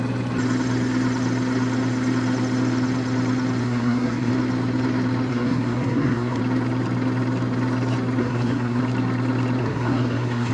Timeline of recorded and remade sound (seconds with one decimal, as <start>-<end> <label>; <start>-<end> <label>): 0.0-3.6 recorded; 3.6-4.3 remade; 4.3-5.3 recorded; 5.3-6.4 remade; 6.4-8.2 recorded; 8.2-8.8 remade; 8.8-9.6 recorded; 9.6-10.5 remade